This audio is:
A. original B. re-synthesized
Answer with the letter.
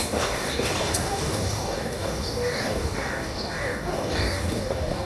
B